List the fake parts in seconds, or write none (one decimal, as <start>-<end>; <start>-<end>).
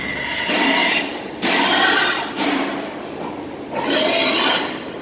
none